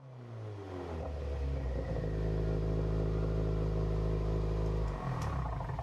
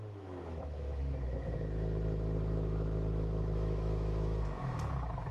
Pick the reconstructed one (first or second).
second